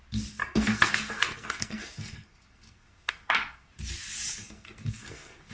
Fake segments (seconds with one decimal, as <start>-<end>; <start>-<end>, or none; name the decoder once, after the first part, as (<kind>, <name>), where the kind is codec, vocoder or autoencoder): 0.4-3.7 (codec, SNAC); 4.4-5.5